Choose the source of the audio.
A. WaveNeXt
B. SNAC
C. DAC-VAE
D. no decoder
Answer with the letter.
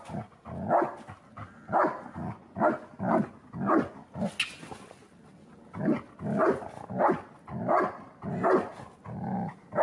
D